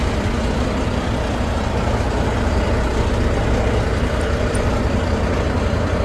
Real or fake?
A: real